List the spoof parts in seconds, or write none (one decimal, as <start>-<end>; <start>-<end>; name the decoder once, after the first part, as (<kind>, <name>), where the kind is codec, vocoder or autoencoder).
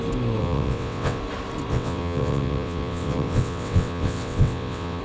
0.4-1.2 (vocoder, WaveNeXt); 1.7-5.0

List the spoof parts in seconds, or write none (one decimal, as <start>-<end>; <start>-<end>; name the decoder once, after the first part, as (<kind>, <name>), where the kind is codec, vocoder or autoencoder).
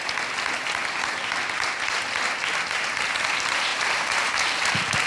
3.7-4.3 (vocoder, BigVGAN v2)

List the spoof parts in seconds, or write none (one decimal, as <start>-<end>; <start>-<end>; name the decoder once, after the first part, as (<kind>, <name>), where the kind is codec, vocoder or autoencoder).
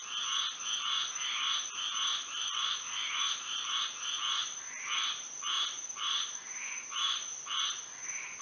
2.1-3.8 (vocoder, BigVGAN v2); 4.4-7.7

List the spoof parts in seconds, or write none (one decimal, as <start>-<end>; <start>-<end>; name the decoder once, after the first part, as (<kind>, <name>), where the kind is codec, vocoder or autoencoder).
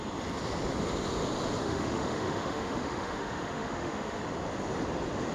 1.6-4.2 (autoencoder, DAC-VAE)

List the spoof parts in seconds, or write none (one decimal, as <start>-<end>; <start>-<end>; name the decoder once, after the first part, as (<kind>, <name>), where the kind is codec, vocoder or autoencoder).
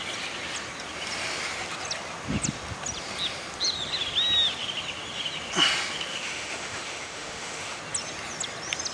6.1-7.8 (autoencoder, DAC-VAE)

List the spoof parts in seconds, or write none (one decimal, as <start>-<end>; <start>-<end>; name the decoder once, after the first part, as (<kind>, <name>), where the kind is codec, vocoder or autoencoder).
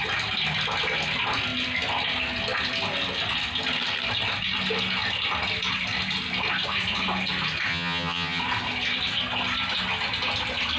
7.7-8.4 (vocoder, HiFi-GAN)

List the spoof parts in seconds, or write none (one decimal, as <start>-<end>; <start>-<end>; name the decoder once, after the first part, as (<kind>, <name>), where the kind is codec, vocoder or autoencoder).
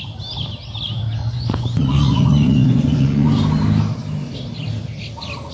1.2-3.3 (vocoder, Vocos)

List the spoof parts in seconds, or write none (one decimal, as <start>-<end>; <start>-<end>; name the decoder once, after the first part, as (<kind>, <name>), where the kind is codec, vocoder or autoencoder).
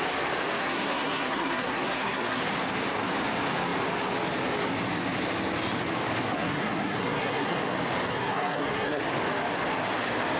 0.6-2.4 (codec, SNAC); 6.2-7.6; 8.1-9.0